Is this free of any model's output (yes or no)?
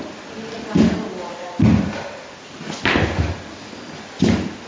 yes